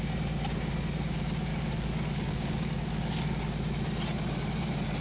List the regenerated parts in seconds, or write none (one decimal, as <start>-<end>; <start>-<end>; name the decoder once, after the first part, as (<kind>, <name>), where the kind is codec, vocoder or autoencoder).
1.5-3.4 (codec, DAC)